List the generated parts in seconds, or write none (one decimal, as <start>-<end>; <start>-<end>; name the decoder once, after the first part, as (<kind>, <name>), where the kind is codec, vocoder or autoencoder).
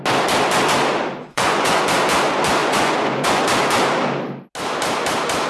1.2-1.8 (vocoder, Vocos); 2.6-3.4